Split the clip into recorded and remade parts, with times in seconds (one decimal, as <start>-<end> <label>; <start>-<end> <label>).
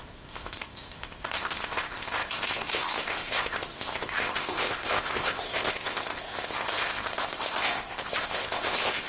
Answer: 0.0-9.1 remade